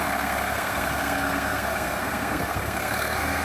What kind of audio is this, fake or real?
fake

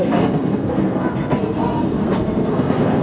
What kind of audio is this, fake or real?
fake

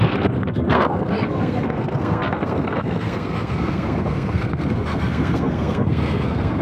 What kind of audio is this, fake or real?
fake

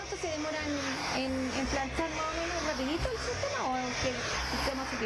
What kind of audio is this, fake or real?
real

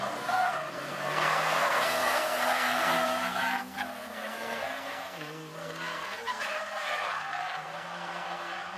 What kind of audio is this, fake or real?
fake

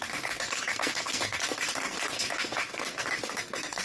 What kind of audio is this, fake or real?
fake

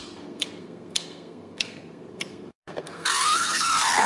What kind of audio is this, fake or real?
fake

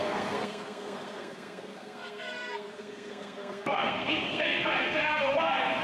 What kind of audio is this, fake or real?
fake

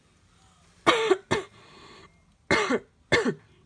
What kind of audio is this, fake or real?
real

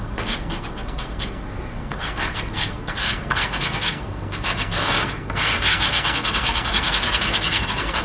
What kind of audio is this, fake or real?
fake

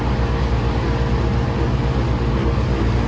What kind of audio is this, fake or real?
real